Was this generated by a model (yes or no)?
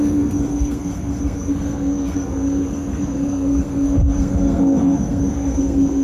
yes